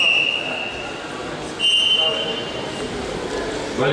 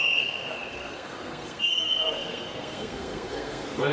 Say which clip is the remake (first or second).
second